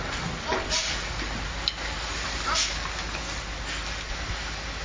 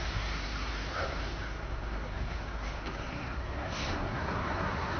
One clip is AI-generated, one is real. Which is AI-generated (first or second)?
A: second